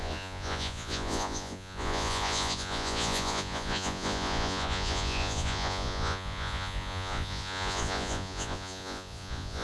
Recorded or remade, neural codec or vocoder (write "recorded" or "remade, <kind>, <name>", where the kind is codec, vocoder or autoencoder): remade, vocoder, Vocos